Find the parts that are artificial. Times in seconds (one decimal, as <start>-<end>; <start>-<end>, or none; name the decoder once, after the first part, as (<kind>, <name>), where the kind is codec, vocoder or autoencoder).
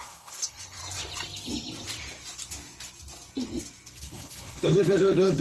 0.0-0.8 (codec, HILCodec); 4.0-5.4